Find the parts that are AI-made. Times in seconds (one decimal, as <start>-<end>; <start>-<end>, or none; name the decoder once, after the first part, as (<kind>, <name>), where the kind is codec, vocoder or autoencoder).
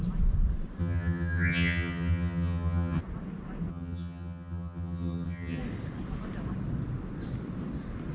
0.8-3.0 (vocoder, HiFi-GAN); 3.7-5.6